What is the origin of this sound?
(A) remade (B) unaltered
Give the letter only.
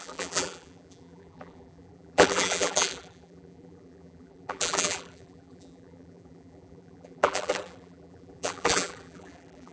A